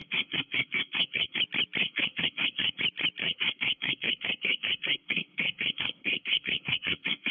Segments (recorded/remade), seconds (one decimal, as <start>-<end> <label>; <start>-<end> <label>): 0.0-1.4 remade; 1.4-1.8 recorded; 1.8-2.8 remade; 2.8-3.2 recorded; 3.2-7.3 remade